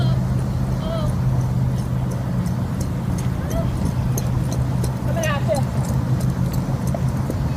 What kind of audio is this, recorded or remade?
recorded